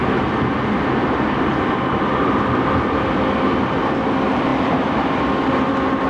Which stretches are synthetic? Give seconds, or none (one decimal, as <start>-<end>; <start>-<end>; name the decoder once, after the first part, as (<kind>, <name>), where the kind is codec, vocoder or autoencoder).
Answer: none